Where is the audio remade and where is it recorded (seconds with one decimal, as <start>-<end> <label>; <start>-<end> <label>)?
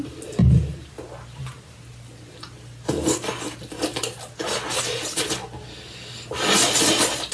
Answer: 0.0-7.3 recorded